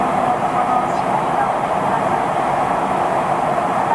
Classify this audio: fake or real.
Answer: real